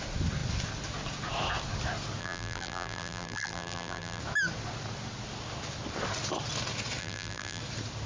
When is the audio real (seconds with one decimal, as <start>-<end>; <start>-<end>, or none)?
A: 0.0-2.2; 4.2-7.0; 7.6-8.1